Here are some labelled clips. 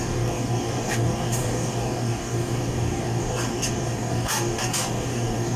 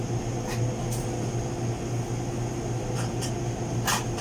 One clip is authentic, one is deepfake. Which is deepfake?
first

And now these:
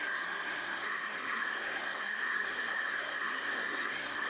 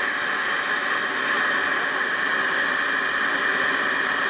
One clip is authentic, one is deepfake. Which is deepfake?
first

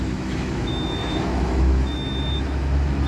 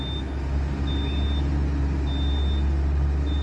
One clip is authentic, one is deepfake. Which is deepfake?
first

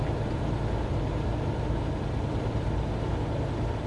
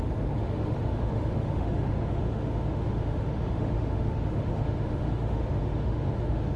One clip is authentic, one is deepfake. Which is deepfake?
second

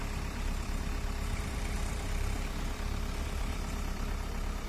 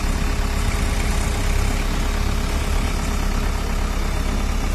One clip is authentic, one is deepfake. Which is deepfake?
first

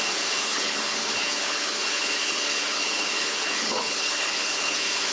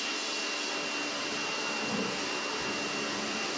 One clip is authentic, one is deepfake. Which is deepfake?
first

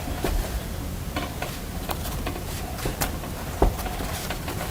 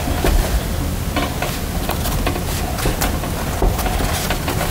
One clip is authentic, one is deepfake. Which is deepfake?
first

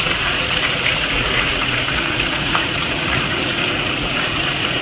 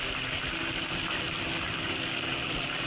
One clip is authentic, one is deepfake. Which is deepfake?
first